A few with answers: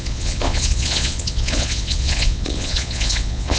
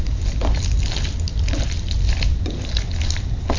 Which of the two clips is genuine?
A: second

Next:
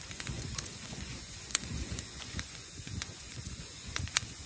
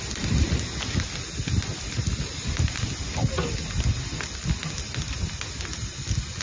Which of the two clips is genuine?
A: second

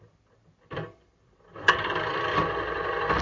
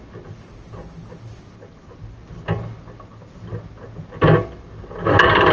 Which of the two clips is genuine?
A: second